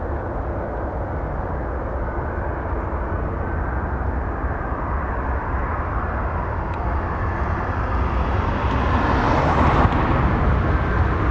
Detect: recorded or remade recorded